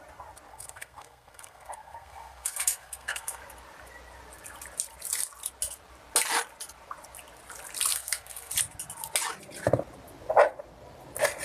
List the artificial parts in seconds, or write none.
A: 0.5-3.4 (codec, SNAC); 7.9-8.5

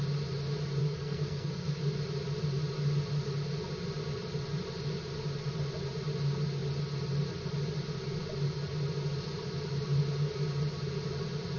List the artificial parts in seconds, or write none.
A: 0.8-1.8 (codec, SNAC)

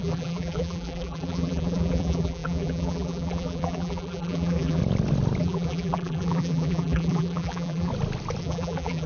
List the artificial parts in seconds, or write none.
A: 0.0-4.8 (vocoder, BigVGAN v2); 5.4-7.9; 8.4-9.1

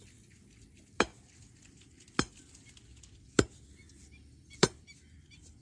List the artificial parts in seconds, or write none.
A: none

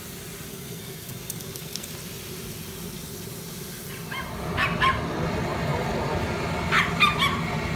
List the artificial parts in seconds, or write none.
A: 0.5-1.9 (codec, SNAC)

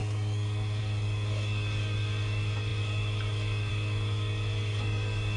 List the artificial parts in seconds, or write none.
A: 0.0-5.4 (codec, DAC)

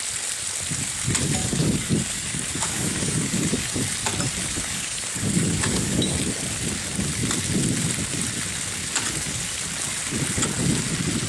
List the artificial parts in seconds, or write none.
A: 1.4-3.8 (codec, DAC); 4.4-6.3

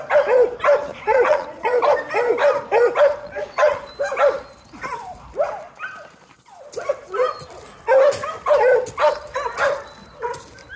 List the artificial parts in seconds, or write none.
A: 0.9-1.8 (vocoder, Vocos); 3.2-3.9